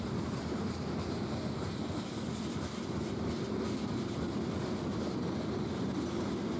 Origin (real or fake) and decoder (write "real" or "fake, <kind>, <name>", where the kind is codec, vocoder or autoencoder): real